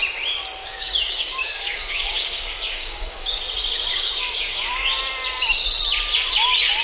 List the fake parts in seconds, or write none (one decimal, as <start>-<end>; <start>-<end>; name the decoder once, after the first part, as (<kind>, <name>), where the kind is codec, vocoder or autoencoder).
0.6-3.4 (codec, DAC); 3.9-5.0